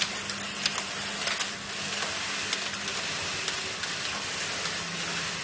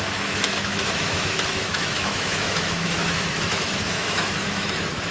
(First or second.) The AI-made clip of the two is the second